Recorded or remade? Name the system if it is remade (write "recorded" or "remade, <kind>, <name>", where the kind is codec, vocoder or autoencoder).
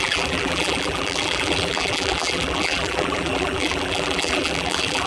remade, vocoder, BigVGAN v2